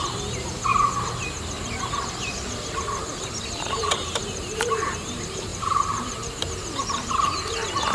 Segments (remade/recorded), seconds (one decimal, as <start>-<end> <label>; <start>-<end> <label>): 0.0-0.7 remade; 0.7-3.6 recorded; 3.6-7.9 remade